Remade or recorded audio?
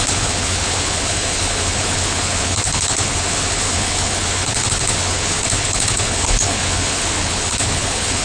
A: remade